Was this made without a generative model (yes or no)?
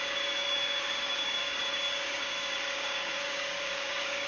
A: no